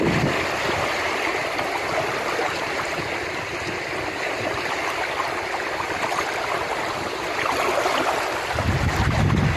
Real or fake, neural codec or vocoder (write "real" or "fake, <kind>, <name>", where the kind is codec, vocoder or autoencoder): real